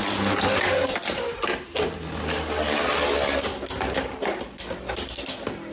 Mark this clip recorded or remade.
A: recorded